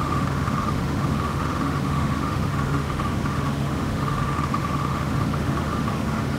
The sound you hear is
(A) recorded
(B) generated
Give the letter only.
B